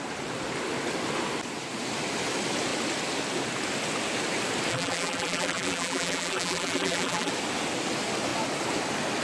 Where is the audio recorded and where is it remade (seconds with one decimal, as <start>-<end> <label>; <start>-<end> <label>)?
0.0-4.7 recorded; 4.7-7.3 remade; 7.3-9.2 recorded